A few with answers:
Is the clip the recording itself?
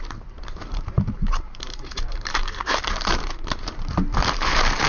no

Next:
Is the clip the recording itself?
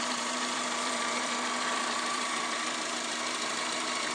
no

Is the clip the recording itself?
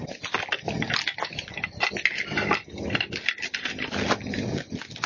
yes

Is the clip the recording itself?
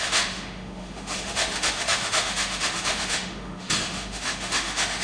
no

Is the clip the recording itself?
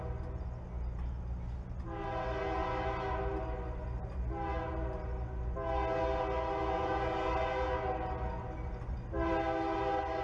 yes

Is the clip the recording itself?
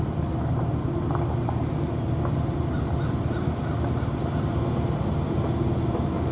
yes